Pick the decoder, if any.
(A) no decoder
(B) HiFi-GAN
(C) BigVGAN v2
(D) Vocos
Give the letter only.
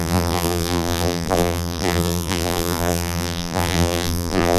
C